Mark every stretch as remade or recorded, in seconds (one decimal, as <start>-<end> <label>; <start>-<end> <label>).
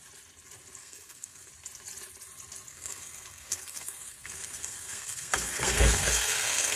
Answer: 0.0-0.8 recorded; 0.8-1.5 remade; 1.5-2.7 recorded; 2.7-6.8 remade